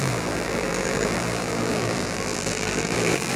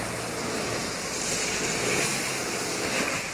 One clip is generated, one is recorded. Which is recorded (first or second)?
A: second